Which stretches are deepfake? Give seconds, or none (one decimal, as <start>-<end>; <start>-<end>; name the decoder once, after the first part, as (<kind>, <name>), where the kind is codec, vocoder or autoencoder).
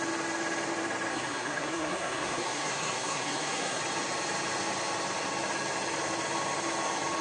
1.1-3.8 (codec, SNAC)